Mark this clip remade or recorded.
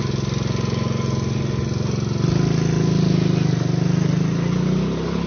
recorded